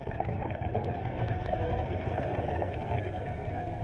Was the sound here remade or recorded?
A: remade